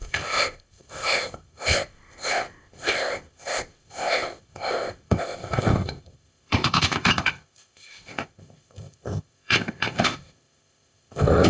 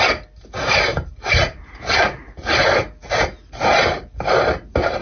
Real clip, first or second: second